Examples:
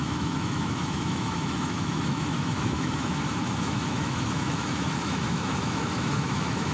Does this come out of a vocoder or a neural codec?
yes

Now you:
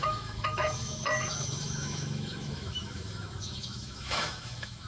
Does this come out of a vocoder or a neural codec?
yes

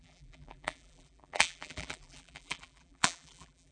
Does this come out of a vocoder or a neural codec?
yes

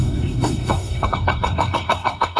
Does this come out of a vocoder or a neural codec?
yes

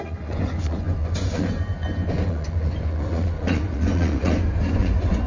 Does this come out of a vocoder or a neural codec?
yes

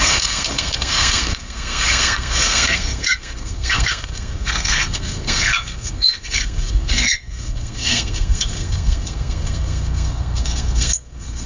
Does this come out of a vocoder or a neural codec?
yes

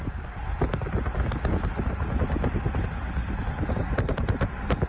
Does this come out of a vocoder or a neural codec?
no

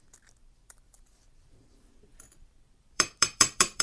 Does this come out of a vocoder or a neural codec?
yes